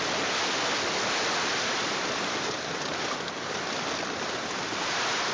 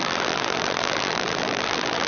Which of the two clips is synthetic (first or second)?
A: second